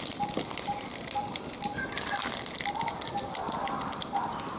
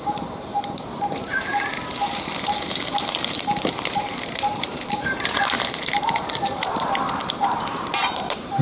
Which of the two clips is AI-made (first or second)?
second